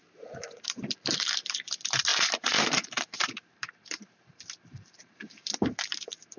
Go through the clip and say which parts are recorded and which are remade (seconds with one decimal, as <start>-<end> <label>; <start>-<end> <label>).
0.0-6.4 remade